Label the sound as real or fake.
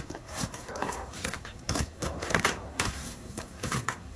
fake